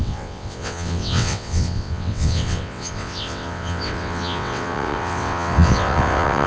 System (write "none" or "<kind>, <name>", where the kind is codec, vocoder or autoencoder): vocoder, WaveNeXt